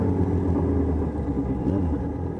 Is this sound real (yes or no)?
yes